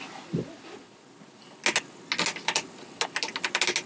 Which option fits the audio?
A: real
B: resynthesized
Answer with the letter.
A